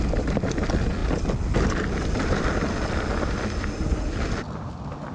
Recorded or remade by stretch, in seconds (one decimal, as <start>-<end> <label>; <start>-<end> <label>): 0.0-5.1 recorded